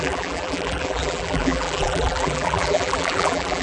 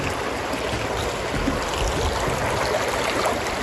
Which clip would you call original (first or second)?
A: second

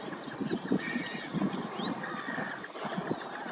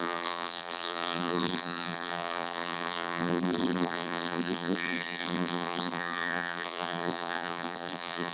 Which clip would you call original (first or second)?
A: first